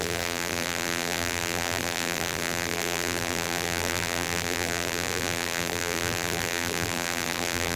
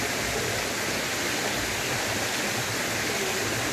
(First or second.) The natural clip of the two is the second